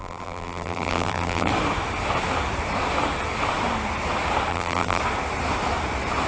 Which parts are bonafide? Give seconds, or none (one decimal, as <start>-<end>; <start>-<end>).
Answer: 1.5-4.5; 5.0-6.3